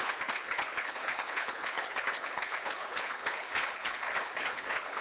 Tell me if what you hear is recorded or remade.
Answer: remade